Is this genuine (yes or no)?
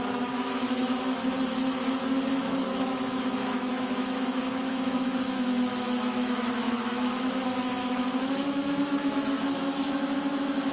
no